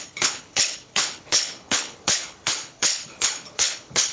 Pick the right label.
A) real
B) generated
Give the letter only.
B